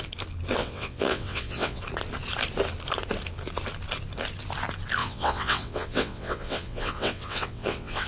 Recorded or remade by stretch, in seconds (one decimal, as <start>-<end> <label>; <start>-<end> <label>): 0.0-0.6 recorded; 0.6-1.8 remade; 1.8-5.0 recorded; 5.0-8.1 remade